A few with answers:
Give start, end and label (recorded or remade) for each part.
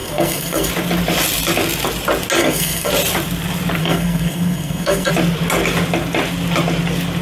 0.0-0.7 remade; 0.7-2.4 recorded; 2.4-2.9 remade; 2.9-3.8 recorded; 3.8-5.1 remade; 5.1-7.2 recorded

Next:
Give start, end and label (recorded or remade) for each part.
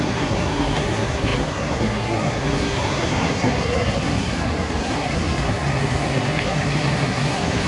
0.0-7.7 remade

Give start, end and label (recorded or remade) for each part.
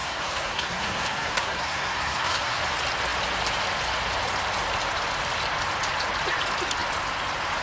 0.0-2.6 remade; 2.6-7.6 recorded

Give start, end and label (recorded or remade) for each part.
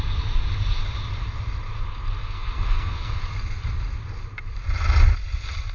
0.0-2.2 recorded; 2.2-3.2 remade; 3.2-5.7 recorded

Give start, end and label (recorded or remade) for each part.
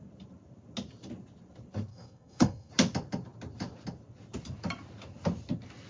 0.0-1.9 recorded; 1.9-2.7 remade; 2.7-5.9 recorded